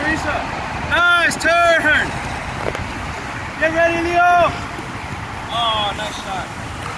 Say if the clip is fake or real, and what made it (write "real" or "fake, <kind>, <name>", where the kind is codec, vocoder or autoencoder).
real